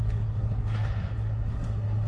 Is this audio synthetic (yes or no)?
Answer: yes